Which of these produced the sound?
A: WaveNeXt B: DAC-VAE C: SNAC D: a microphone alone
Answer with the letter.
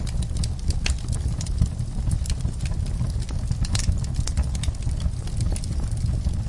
D